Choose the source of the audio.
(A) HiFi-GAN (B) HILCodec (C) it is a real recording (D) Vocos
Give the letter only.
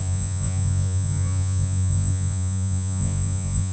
D